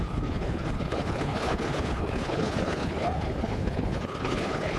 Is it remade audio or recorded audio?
remade